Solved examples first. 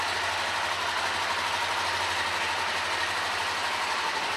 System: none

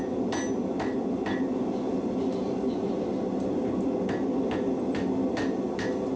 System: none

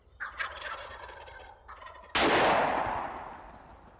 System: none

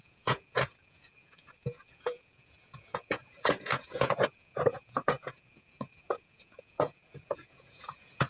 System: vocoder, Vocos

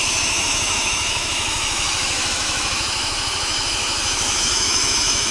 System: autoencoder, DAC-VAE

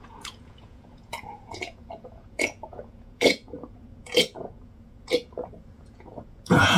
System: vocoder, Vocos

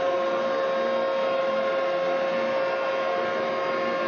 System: none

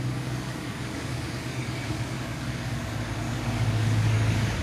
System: codec, DAC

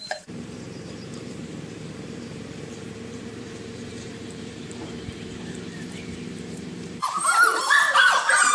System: vocoder, BigVGAN v2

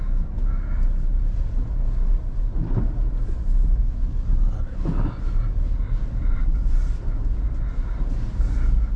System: none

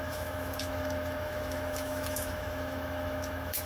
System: autoencoder, DAC-VAE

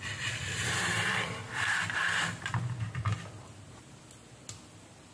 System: none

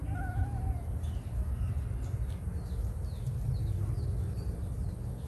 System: none